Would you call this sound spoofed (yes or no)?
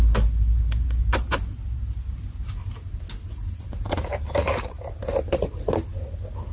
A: no